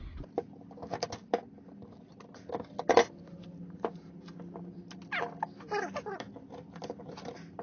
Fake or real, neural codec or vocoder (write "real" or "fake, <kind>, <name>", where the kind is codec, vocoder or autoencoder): real